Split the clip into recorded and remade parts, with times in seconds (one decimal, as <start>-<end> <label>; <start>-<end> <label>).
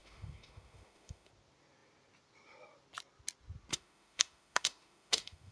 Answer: 0.0-1.3 remade; 1.3-3.7 recorded; 3.7-5.5 remade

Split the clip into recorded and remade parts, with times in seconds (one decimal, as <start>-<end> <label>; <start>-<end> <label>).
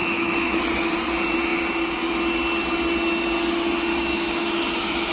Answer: 0.0-0.6 remade; 0.6-3.9 recorded; 3.9-5.1 remade